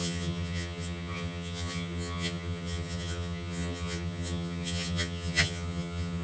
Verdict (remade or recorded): remade